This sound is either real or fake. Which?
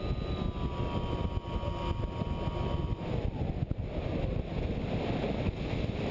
real